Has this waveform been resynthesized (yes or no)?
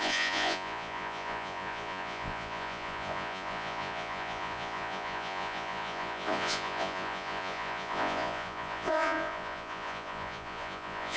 yes